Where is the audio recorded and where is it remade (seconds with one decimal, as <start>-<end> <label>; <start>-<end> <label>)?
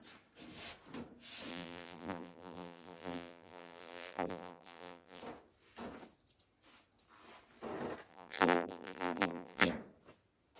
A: 0.0-1.5 recorded; 1.5-5.2 remade; 5.2-8.1 recorded; 8.1-9.7 remade; 9.7-10.6 recorded